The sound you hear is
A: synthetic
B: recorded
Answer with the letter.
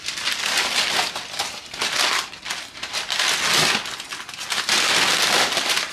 B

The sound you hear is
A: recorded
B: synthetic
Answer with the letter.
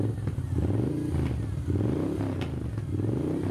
A